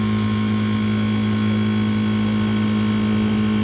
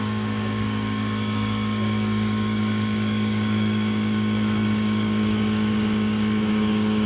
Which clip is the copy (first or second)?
second